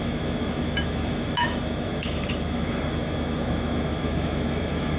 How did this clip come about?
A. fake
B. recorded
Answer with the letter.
A